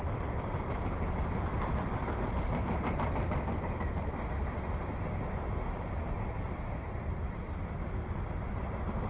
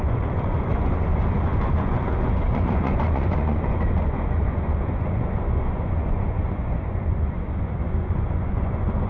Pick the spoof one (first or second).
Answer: second